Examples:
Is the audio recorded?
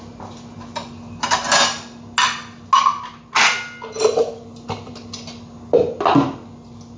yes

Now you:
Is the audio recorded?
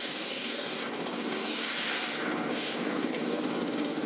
no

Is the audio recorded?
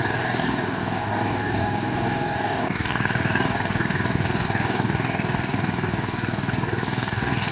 no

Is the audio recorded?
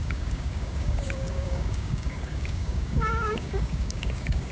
no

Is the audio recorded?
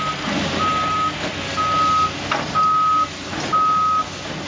yes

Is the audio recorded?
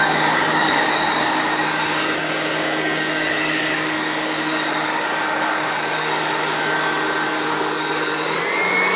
no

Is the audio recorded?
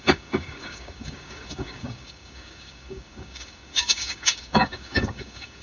no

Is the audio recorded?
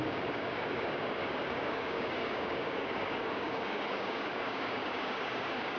no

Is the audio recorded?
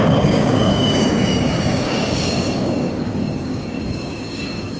no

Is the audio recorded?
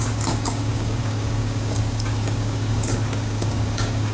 no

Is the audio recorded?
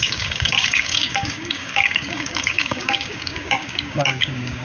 no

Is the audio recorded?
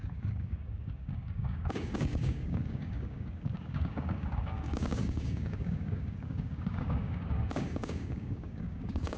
no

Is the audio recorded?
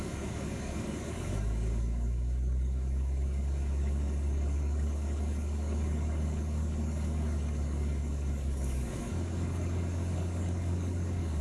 no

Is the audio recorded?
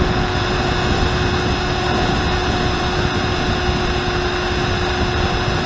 yes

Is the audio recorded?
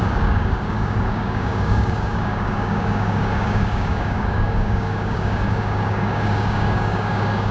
no